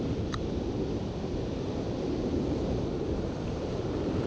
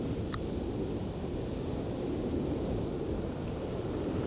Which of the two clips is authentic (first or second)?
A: second